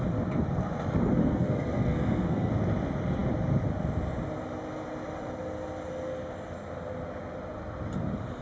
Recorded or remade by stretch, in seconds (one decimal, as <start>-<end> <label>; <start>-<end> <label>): 0.0-1.2 recorded; 1.2-2.5 remade; 2.5-8.4 recorded